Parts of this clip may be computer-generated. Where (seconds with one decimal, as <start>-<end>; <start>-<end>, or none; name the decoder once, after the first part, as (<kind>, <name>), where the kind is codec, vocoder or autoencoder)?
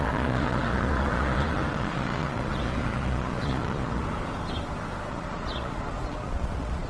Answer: 0.0-4.0 (vocoder, Vocos); 5.1-6.9